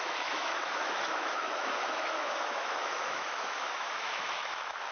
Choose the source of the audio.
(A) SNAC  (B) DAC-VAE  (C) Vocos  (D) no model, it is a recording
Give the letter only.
B